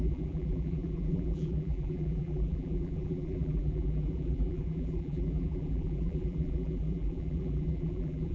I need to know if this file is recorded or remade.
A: remade